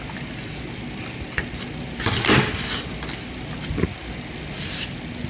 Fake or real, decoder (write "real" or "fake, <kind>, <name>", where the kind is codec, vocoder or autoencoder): real